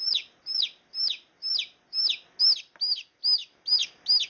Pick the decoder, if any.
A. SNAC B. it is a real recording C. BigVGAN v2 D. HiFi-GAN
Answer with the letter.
B